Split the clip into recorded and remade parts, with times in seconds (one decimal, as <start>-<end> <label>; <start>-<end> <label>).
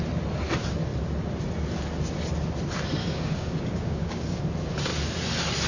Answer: 0.0-3.0 recorded; 3.0-4.4 remade; 4.4-5.7 recorded